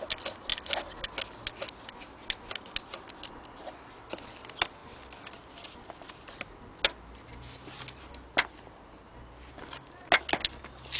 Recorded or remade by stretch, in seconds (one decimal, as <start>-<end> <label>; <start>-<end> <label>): 0.0-11.0 recorded